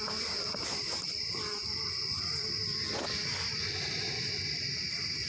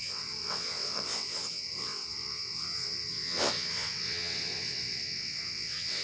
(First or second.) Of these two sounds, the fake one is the second